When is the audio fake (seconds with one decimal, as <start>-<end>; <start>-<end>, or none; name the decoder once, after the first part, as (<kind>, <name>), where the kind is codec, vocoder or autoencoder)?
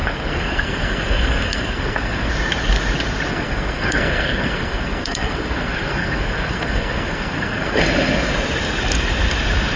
0.0-2.3 (codec, SNAC); 3.3-7.8